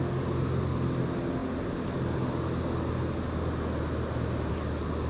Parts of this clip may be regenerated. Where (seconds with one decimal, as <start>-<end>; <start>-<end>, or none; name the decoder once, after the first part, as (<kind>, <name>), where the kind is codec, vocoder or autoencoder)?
none